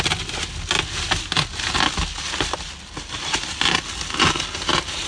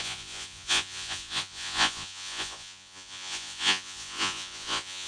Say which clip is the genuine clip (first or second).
first